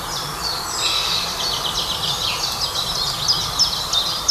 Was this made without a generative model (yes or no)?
yes